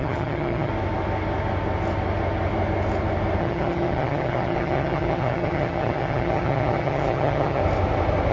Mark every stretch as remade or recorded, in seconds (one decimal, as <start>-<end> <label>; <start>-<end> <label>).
0.0-0.7 remade; 0.7-3.4 recorded; 3.4-7.6 remade; 7.6-8.3 recorded